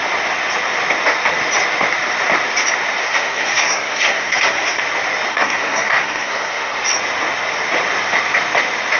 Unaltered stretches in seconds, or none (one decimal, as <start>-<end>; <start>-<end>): 0.0-3.0; 4.8-5.3; 6.8-9.0